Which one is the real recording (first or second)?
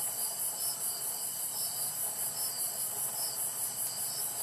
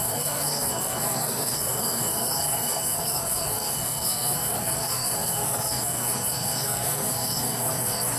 first